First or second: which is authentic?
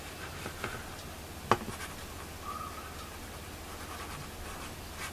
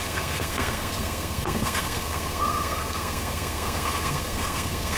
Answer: first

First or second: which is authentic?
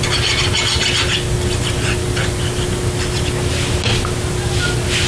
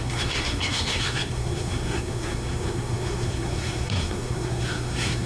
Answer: first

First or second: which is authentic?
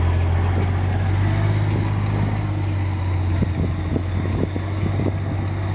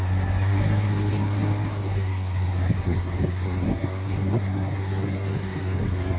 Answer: first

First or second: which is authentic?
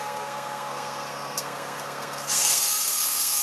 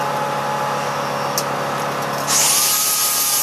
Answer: second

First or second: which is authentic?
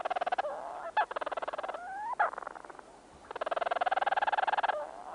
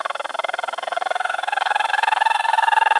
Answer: first